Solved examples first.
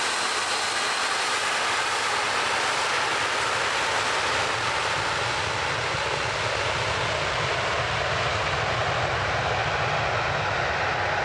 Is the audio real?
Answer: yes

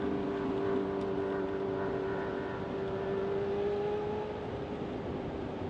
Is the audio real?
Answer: yes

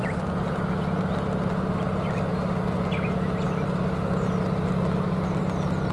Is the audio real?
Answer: yes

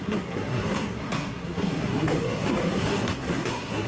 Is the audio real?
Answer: no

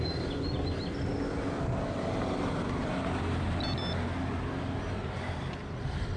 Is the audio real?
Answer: yes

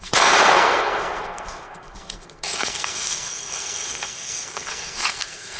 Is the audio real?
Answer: no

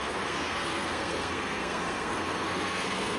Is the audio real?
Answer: no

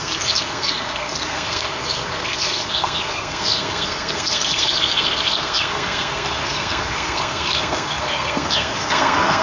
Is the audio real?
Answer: no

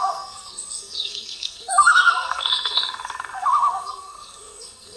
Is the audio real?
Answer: no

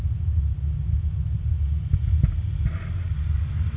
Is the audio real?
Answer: yes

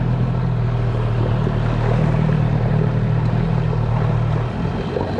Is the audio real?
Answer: yes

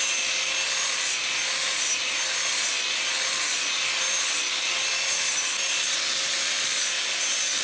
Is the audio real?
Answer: yes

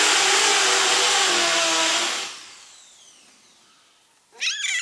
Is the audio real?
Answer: yes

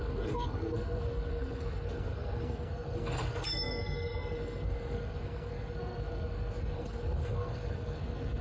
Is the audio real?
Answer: no